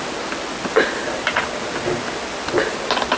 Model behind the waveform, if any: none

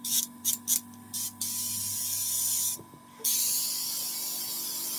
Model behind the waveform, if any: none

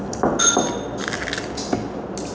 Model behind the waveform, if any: none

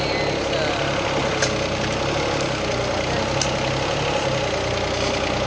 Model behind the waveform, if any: none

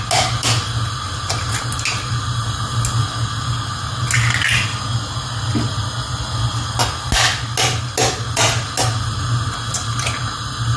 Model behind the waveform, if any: none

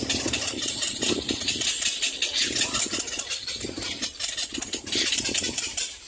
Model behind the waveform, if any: none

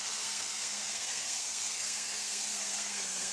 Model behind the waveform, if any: codec, SNAC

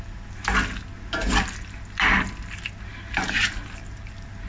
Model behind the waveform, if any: none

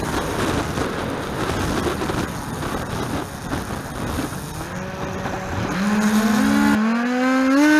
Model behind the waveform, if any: none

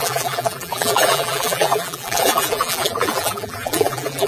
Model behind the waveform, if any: vocoder, BigVGAN v2